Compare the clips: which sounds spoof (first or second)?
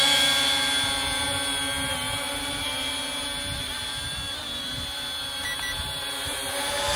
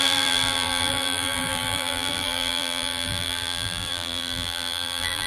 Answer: second